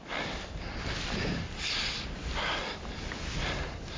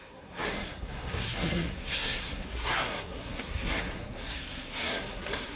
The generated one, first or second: second